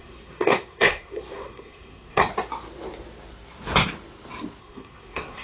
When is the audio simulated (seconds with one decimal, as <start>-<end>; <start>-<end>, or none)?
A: 0.0-2.3; 4.6-5.4